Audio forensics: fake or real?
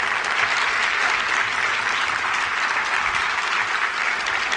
real